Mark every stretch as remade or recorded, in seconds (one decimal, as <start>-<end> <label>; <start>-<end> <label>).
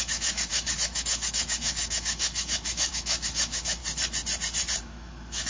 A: 0.0-3.8 remade; 3.8-4.8 recorded; 4.8-5.5 remade